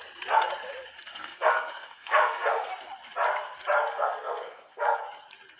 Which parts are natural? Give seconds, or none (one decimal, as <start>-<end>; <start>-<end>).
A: 0.0-1.1; 2.7-3.9; 5.0-5.6